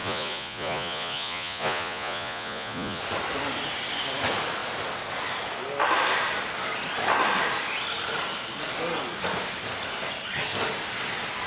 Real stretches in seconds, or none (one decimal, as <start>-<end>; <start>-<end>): 3.0-11.5

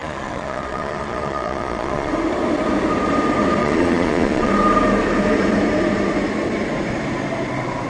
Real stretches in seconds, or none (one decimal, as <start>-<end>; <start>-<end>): 2.1-3.6; 4.5-7.9

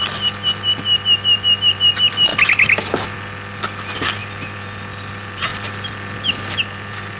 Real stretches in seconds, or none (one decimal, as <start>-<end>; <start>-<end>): 0.0-4.2; 5.1-7.2

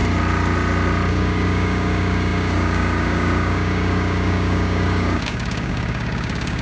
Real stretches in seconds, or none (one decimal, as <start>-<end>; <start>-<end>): 0.0-1.1

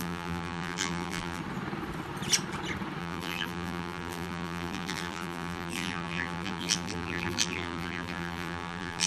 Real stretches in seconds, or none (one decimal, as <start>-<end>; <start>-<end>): 1.4-3.0

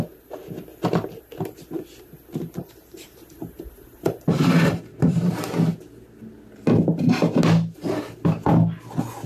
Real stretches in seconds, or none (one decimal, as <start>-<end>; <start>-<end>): 0.0-2.6; 5.3-9.3